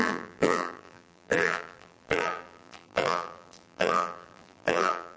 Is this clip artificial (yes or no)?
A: yes